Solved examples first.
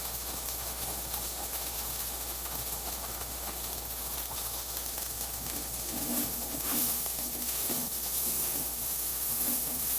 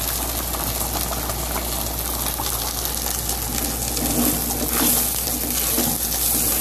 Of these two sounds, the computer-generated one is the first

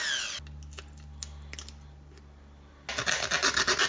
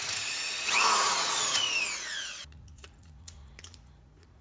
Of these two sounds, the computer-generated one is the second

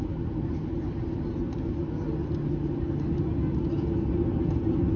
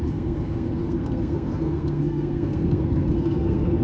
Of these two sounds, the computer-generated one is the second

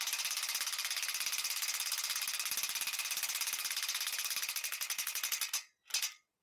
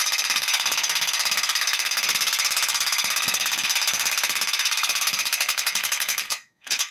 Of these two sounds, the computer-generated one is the second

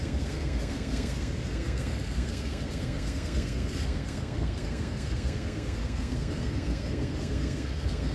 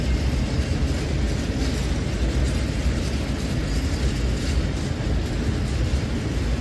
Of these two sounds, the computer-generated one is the first